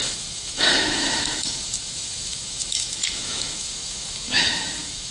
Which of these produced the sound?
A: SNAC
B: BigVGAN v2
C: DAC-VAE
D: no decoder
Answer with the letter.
C